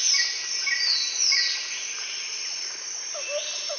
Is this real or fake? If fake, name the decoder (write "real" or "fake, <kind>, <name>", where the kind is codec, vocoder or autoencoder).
real